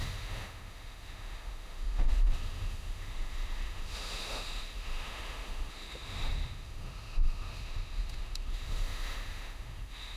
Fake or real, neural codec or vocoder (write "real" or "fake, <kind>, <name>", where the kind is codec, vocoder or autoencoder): fake, autoencoder, DAC-VAE